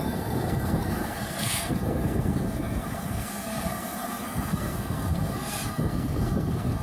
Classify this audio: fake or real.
fake